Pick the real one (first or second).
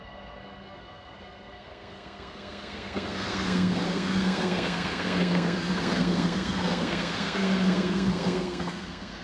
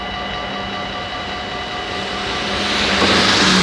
second